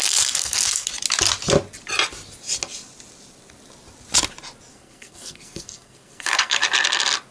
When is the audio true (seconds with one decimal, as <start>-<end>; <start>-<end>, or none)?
0.9-4.7; 6.6-7.3